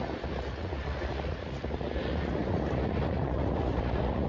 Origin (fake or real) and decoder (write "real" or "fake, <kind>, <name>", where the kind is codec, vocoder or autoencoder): fake, vocoder, Vocos